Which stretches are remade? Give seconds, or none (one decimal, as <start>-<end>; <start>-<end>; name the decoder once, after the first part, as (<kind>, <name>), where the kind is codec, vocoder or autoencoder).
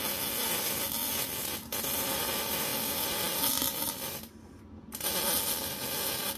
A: 1.0-2.2 (vocoder, BigVGAN v2)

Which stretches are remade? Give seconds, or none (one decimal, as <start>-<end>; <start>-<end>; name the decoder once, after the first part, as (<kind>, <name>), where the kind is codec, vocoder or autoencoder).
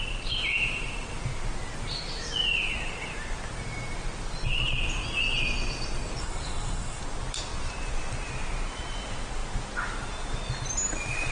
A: 6.2-7.0 (codec, SNAC)